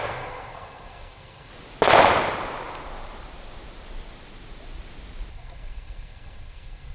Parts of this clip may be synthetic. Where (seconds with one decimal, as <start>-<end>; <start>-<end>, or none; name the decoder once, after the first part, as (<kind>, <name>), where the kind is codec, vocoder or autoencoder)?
0.0-1.5 (codec, SNAC); 5.3-6.9